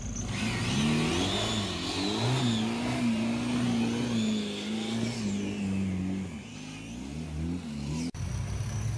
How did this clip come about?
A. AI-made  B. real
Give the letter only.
B